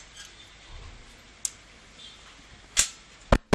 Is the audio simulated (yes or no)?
no